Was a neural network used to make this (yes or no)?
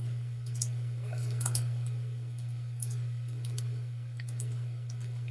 yes